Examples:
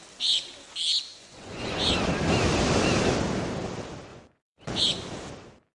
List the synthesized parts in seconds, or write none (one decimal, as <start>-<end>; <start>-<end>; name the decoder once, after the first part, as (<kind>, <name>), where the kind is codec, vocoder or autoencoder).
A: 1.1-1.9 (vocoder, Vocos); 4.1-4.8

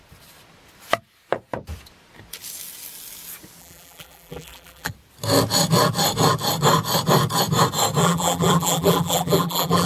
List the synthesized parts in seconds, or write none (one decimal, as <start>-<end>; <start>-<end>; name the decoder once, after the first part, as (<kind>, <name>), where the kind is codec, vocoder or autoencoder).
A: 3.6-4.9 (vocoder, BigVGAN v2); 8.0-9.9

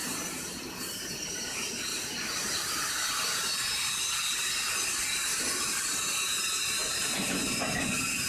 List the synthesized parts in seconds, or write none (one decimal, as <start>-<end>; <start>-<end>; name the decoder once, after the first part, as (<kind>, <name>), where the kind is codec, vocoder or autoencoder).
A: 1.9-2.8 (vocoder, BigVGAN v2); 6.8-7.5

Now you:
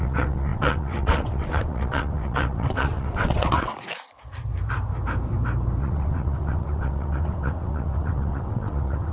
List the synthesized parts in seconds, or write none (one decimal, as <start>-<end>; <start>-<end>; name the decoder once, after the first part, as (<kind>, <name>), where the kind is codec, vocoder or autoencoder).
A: 0.0-3.7 (vocoder, WaveNeXt); 5.8-9.1